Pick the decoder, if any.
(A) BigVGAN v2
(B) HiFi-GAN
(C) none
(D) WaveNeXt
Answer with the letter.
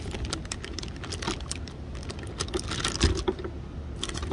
C